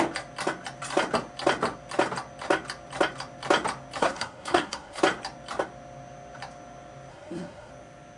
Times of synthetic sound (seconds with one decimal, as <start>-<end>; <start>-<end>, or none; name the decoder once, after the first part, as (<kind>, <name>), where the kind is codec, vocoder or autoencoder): 4.0-5.0 (codec, SNAC); 7.1-7.7